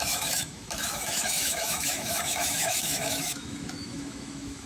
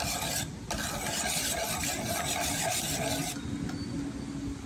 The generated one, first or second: first